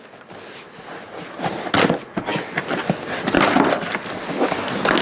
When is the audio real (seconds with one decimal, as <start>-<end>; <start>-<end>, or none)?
0.0-5.0